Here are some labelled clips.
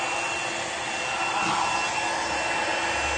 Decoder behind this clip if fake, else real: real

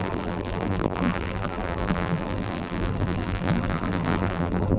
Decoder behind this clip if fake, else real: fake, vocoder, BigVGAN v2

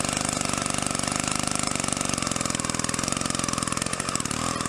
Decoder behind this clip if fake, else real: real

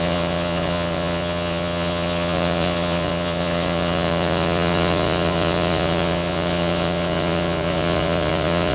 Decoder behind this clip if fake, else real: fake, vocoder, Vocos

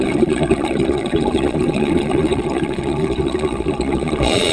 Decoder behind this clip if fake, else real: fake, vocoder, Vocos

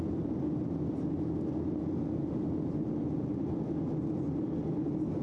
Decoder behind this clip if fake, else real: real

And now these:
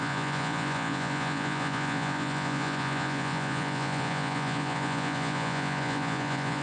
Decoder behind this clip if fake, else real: fake, vocoder, Vocos